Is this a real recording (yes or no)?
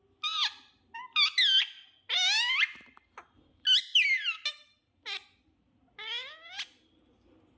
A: yes